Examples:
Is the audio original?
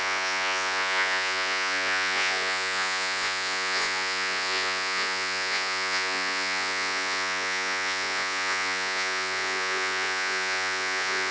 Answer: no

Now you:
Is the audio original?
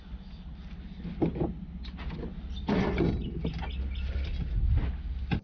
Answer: yes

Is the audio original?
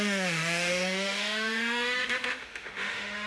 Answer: no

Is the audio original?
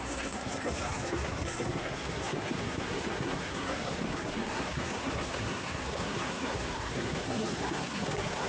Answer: no